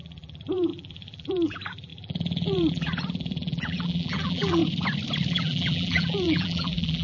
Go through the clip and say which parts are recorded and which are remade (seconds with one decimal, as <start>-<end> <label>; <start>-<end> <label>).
0.0-4.6 remade; 4.6-5.3 recorded; 5.3-7.0 remade